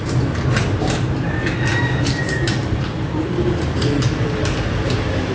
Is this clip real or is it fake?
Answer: real